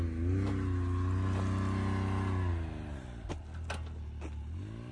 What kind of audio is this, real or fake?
real